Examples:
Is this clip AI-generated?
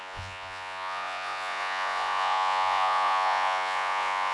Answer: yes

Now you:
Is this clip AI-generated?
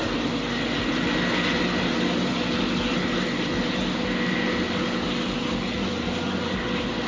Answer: no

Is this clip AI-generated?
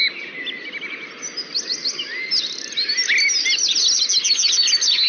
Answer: no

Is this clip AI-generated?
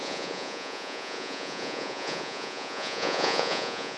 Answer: yes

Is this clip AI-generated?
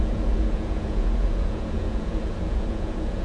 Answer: yes